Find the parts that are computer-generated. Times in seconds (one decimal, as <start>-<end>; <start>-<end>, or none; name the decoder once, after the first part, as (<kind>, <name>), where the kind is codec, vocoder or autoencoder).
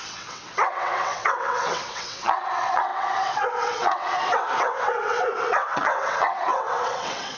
0.0-7.4 (vocoder, WaveNeXt)